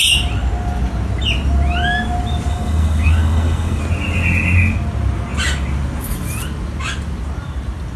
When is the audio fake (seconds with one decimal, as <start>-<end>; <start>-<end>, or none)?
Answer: 2.5-3.8

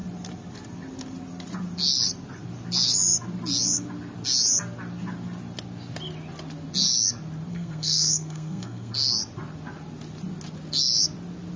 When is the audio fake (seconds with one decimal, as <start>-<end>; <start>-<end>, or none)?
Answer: 7.5-8.9

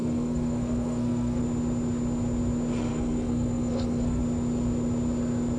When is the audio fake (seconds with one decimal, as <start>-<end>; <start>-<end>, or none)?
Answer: 0.0-1.4; 2.9-4.2

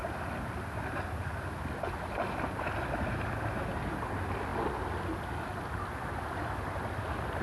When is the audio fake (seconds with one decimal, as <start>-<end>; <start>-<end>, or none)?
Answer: none

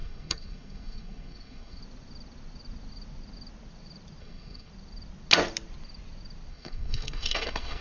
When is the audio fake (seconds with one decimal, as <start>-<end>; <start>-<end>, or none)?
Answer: 0.0-1.8; 4.2-4.7; 6.5-7.8

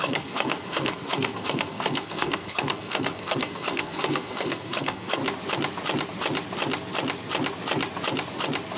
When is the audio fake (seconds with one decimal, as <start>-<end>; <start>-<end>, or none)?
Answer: 0.0-5.2